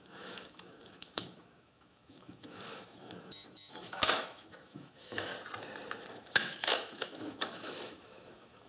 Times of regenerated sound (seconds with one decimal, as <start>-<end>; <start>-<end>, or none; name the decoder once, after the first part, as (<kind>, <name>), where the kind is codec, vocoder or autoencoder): 0.0-5.3 (autoencoder, DAC-VAE); 6.1-8.7